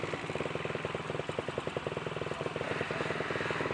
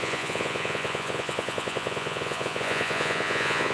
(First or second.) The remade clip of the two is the second